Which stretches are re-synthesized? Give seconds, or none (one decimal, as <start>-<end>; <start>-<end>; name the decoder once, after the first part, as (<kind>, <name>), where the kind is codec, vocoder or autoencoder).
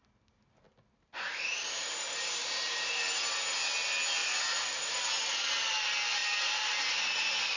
1.3-2.9 (vocoder, BigVGAN v2); 4.2-4.9; 6.2-6.8